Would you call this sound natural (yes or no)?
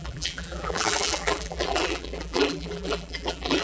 no